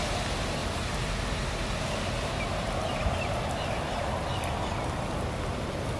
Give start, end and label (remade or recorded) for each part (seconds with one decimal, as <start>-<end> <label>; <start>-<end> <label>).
0.0-0.6 recorded; 0.6-4.2 remade; 4.2-6.0 recorded